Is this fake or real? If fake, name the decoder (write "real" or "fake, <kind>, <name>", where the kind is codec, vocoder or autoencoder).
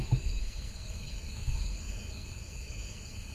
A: fake, codec, SNAC